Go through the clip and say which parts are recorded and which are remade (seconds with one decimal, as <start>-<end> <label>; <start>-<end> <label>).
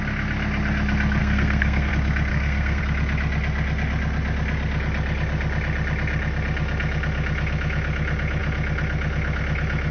0.0-1.2 recorded; 1.2-1.9 remade; 1.9-2.3 recorded; 2.3-2.8 remade; 2.8-9.9 recorded